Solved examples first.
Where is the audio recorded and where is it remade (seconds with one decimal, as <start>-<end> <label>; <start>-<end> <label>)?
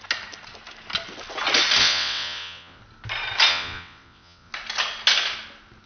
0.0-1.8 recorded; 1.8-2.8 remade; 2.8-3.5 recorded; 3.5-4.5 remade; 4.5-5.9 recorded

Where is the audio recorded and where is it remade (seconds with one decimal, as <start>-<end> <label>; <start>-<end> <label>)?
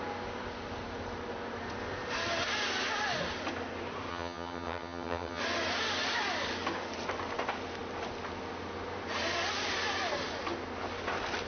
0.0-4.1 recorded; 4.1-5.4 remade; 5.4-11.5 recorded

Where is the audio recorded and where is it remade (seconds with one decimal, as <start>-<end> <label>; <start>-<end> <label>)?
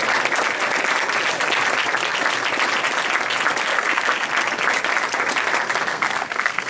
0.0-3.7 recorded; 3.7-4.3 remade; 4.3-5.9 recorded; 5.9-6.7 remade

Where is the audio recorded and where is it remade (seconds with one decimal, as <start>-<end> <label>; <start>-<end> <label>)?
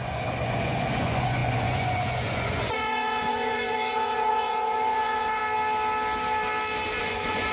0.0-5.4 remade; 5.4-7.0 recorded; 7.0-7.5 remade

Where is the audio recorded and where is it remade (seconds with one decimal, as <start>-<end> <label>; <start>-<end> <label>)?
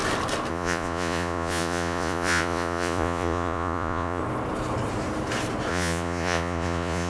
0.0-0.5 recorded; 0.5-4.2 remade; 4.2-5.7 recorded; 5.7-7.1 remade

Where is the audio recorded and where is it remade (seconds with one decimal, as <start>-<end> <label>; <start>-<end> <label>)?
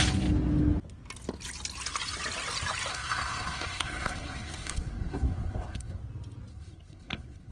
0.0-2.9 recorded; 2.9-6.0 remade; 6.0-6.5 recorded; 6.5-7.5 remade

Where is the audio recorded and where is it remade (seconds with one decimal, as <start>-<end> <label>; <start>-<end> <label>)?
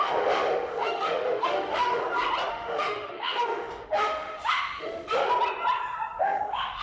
0.0-2.0 remade; 2.0-2.5 recorded; 2.5-5.3 remade; 5.3-6.2 recorded; 6.2-6.8 remade